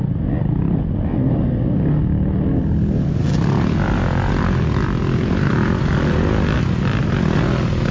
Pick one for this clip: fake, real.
real